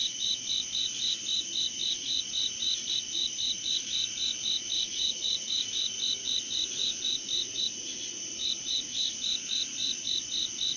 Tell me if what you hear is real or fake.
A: fake